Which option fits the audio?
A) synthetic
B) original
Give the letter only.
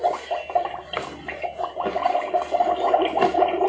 B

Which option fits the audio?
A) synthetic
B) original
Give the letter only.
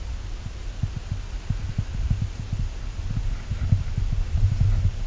B